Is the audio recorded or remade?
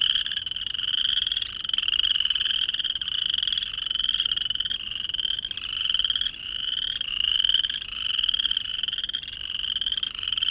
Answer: recorded